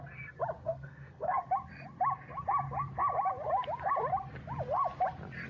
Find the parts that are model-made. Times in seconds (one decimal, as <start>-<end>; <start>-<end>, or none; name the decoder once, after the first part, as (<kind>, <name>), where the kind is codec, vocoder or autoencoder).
0.6-1.4 (codec, SNAC)